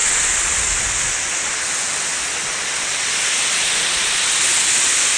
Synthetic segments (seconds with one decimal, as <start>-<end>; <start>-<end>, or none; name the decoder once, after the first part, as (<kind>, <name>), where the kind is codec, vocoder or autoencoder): none